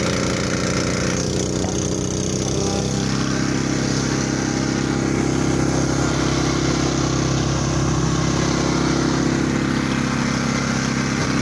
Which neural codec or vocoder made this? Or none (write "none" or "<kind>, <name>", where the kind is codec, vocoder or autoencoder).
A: none